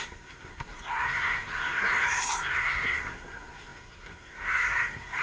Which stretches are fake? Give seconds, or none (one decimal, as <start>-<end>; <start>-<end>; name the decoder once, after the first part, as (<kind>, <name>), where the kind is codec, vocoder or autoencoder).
0.0-5.2 (codec, SNAC)